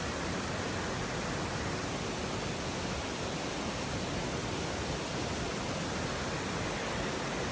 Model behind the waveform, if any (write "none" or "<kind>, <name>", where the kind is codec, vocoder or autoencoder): none